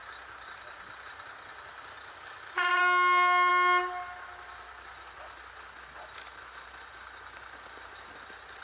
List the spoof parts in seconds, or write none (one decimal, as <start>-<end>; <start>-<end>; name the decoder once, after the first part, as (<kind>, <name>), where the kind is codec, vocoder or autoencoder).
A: none